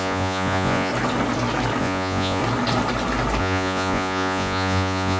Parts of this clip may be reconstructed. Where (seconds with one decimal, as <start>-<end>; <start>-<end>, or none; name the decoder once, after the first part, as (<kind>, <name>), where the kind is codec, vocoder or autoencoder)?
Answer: 0.0-0.9 (vocoder, Vocos); 1.8-2.4; 3.4-5.2